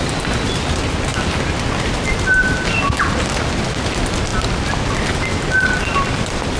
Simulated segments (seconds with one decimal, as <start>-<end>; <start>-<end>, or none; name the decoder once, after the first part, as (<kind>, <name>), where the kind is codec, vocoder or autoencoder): 1.1-3.0 (vocoder, BigVGAN v2); 4.3-5.2